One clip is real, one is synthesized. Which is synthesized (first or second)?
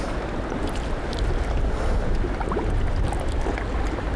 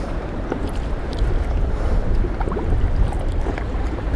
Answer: second